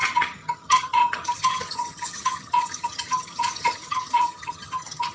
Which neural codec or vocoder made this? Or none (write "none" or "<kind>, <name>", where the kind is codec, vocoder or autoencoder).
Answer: vocoder, HiFi-GAN